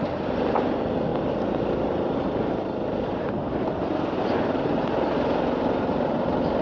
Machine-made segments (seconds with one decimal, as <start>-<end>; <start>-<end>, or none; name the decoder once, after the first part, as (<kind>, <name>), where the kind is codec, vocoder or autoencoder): none